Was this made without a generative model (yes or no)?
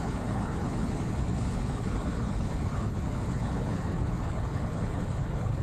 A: no